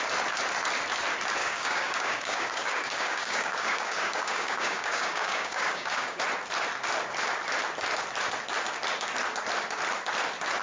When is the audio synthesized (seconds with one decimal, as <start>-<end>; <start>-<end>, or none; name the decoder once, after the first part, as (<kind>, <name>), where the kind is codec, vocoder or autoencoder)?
1.4-6.2 (codec, DAC)